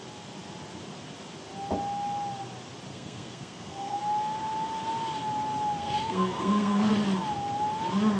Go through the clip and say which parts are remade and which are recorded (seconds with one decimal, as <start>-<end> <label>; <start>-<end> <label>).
0.0-2.9 recorded; 2.9-4.0 remade; 4.0-5.8 recorded; 5.8-6.9 remade; 6.9-8.2 recorded

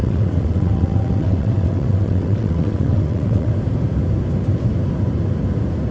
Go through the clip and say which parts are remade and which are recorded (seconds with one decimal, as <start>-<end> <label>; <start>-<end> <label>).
0.0-3.5 remade; 3.5-5.9 recorded

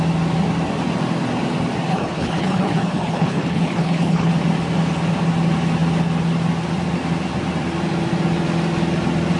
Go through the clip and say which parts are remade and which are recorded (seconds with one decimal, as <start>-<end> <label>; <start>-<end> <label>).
0.0-1.9 recorded; 1.9-4.3 remade; 4.3-9.4 recorded

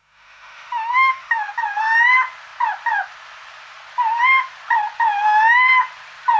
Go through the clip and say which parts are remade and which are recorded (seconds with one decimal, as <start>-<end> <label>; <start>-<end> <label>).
0.0-1.5 remade; 1.5-6.4 recorded

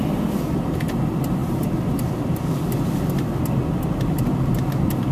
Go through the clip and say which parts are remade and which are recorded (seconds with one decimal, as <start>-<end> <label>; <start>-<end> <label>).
0.0-5.1 recorded

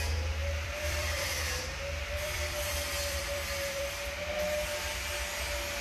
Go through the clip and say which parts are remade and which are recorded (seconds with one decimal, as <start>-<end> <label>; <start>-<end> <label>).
0.0-0.4 recorded; 0.4-3.9 remade; 3.9-5.8 recorded